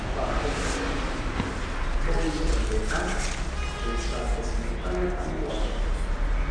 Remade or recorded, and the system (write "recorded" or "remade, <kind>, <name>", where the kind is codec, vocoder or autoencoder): recorded